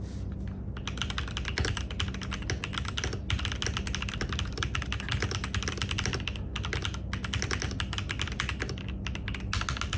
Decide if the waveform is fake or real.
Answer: real